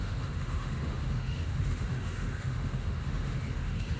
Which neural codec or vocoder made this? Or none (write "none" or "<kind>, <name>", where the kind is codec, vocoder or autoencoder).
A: autoencoder, DAC-VAE